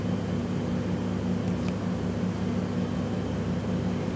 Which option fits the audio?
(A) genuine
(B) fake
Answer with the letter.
A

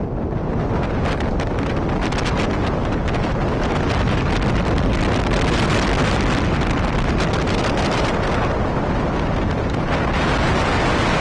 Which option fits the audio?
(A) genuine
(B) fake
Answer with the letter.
A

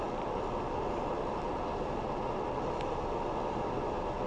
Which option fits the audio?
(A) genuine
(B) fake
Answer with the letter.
A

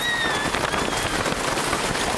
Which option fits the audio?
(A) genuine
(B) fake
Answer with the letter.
A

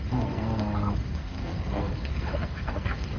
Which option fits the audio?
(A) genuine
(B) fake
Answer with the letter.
B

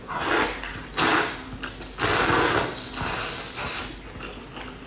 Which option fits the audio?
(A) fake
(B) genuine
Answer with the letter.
B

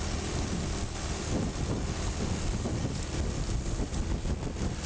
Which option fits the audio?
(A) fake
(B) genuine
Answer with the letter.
B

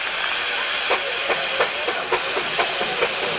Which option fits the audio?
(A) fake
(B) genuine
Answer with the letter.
B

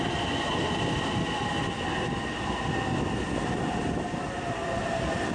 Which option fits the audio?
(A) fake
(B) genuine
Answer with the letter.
B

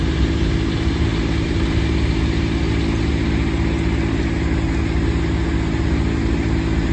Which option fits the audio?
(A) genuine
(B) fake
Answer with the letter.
A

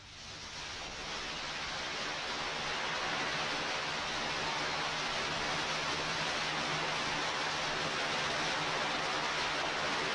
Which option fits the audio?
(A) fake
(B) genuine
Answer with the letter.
B